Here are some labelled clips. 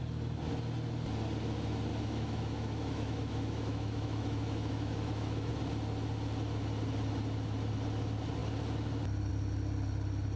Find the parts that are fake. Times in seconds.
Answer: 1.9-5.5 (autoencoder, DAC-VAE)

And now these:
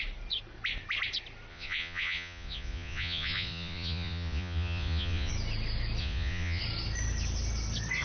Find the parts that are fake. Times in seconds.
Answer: 1.5-5.3 (vocoder, Vocos); 6.0-6.6

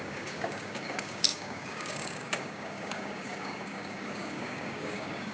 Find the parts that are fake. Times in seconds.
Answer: 0.0-5.3 (codec, DAC)